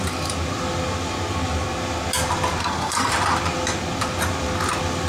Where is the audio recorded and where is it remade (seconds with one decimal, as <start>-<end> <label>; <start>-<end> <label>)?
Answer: 0.0-2.6 recorded; 2.6-3.1 remade; 3.1-5.1 recorded